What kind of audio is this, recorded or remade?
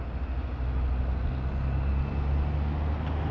recorded